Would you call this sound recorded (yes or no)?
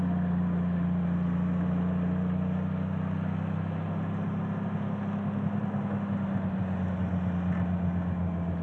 yes